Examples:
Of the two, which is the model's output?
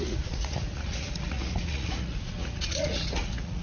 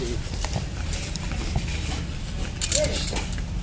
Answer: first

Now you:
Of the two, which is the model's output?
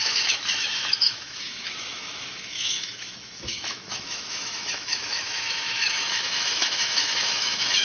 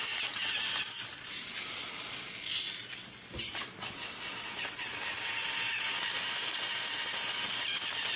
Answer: first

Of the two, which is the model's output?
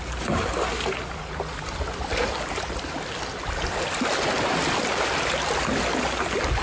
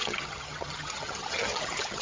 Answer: second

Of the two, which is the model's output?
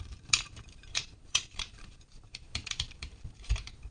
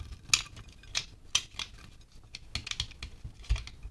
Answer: first